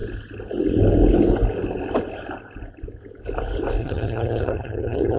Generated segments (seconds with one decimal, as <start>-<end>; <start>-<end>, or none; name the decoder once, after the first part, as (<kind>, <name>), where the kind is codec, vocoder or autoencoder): 3.8-5.2 (vocoder, HiFi-GAN)